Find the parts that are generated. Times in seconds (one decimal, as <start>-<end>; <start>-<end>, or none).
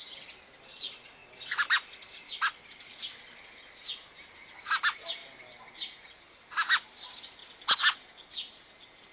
5.2-6.3